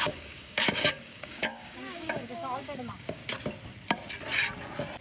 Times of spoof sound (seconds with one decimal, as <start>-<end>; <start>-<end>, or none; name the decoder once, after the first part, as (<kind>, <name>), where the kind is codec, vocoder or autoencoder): 0.0-3.2 (codec, DAC)